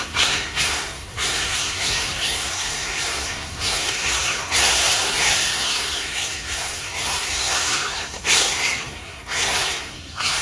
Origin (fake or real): fake